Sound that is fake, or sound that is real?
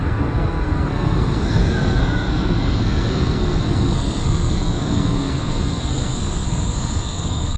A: fake